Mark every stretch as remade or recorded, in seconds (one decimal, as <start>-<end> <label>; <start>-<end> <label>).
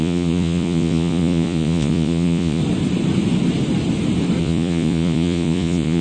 0.0-2.6 remade; 2.6-4.4 recorded; 4.4-6.0 remade